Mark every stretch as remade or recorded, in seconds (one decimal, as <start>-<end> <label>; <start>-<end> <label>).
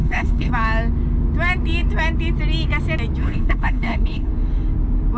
0.0-0.5 remade; 0.5-3.2 recorded; 3.2-4.3 remade; 4.3-5.2 recorded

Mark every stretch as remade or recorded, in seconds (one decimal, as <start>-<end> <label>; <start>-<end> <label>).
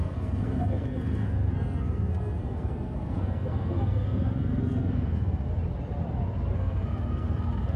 0.0-5.5 remade; 5.5-6.5 recorded; 6.5-7.8 remade